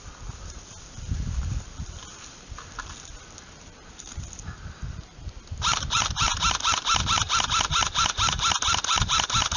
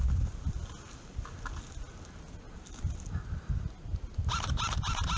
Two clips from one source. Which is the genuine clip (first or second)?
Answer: second